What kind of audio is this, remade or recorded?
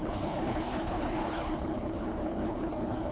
remade